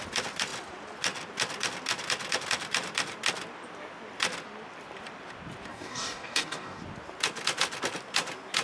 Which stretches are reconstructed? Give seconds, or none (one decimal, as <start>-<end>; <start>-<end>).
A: 5.7-6.8